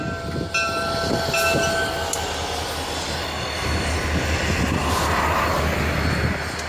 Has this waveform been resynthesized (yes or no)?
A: no